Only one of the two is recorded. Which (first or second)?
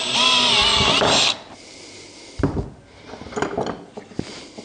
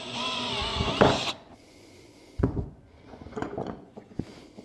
first